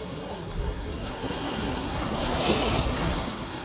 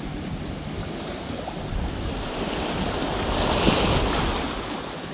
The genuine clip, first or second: second